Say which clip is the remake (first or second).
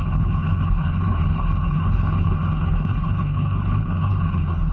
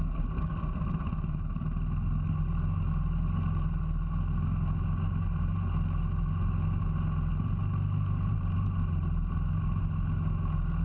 first